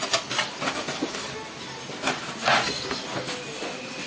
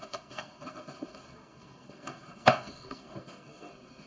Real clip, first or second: first